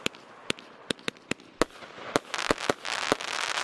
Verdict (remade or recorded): recorded